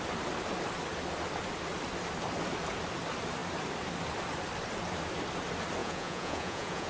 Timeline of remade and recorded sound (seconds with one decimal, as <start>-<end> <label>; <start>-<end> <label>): 0.0-5.8 recorded; 5.8-6.9 remade